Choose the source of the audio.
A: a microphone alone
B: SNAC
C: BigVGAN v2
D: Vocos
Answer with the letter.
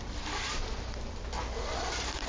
C